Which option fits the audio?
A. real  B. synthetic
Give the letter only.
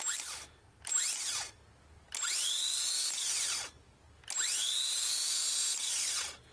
A